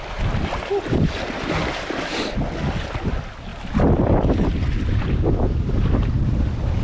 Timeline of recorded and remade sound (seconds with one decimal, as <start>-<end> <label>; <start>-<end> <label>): 0.0-6.8 recorded